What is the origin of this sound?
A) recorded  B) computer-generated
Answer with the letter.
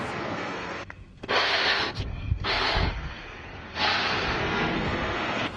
B